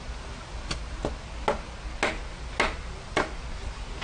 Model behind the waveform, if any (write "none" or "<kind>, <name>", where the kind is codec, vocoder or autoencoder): none